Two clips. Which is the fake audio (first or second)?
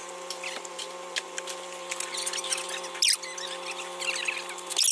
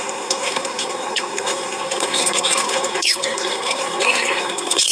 second